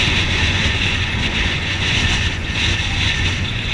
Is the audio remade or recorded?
remade